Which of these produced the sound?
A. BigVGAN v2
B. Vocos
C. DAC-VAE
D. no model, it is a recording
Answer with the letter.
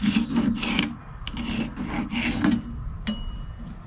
D